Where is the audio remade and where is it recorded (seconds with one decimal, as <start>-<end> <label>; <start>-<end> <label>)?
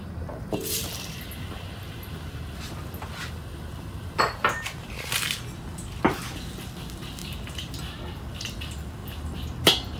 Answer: 0.0-10.0 recorded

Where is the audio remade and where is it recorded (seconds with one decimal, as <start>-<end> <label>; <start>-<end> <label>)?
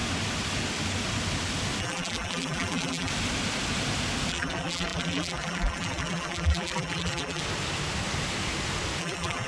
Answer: 0.0-1.8 recorded; 1.8-3.1 remade; 3.1-4.3 recorded; 4.3-7.4 remade; 7.4-9.0 recorded; 9.0-9.5 remade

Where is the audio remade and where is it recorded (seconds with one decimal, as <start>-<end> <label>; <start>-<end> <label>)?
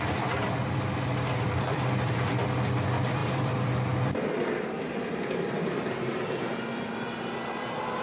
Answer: 0.0-8.0 remade